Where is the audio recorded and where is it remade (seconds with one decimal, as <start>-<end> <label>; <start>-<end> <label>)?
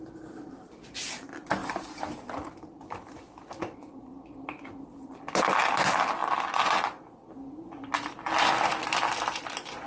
0.0-9.9 recorded